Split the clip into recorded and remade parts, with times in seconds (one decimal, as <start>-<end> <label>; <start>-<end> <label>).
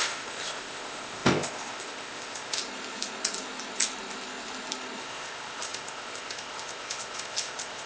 0.0-2.6 remade; 2.6-5.0 recorded; 5.0-7.9 remade